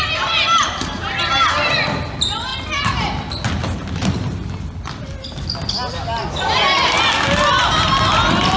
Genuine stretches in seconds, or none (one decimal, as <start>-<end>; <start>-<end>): 0.0-8.6